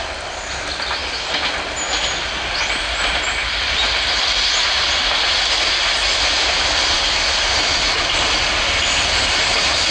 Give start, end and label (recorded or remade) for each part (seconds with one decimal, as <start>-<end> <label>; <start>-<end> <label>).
0.0-9.9 recorded